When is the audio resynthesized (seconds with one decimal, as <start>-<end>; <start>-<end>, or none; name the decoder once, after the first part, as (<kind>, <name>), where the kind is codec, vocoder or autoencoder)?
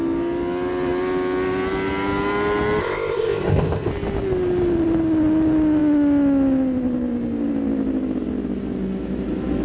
2.8-3.9 (codec, ZipCodec)